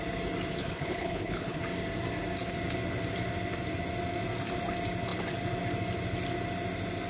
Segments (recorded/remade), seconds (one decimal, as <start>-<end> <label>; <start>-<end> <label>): 0.0-0.6 recorded; 0.6-1.6 remade; 1.6-7.1 recorded